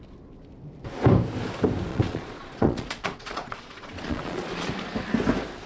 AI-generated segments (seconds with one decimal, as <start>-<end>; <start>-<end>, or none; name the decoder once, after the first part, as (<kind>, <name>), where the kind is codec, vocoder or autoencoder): 1.9-4.7 (vocoder, Vocos)

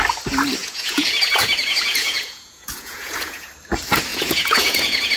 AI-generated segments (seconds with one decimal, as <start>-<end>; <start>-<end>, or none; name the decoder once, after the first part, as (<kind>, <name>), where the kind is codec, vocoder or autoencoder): 0.6-3.5 (vocoder, Vocos); 4.1-5.2

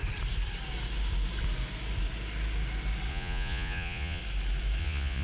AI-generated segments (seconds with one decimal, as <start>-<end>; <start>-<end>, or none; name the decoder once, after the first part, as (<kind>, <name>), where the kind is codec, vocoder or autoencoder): 3.1-4.2 (vocoder, Vocos); 4.8-5.2

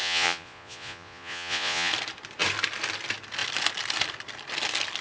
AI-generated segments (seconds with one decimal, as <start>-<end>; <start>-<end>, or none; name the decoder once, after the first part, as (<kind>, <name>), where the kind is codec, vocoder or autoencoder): 0.0-1.9 (vocoder, Vocos)